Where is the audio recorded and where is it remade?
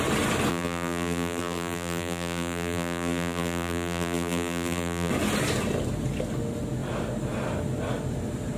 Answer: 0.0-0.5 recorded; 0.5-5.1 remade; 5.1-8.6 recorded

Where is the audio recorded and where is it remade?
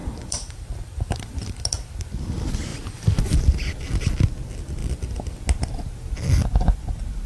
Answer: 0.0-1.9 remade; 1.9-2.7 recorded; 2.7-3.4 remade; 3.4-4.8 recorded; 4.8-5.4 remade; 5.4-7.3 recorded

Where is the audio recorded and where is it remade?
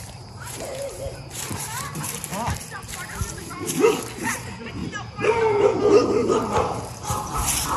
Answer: 0.0-2.3 remade; 2.3-3.4 recorded; 3.4-7.8 remade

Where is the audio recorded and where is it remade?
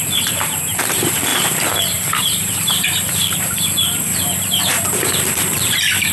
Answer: 0.0-6.1 remade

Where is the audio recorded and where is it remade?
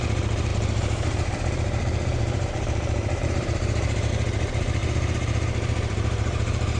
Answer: 0.0-0.5 recorded; 0.5-4.1 remade; 4.1-4.8 recorded; 4.8-6.8 remade